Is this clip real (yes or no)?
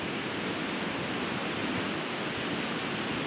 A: yes